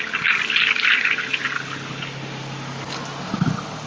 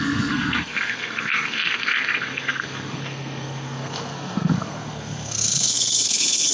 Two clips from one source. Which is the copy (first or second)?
second